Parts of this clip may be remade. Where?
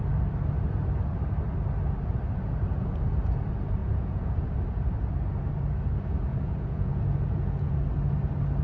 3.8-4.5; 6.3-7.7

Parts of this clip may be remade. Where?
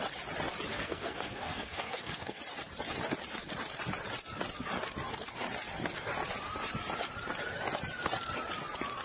0.7-2.4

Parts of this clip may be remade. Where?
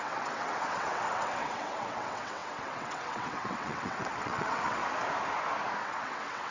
0.0-4.8; 5.8-6.5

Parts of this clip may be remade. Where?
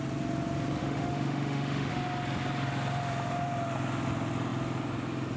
0.8-1.9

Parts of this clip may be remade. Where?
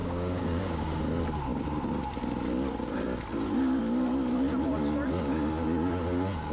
0.0-1.0